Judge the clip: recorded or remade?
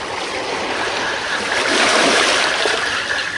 remade